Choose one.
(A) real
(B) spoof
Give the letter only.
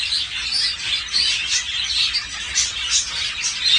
A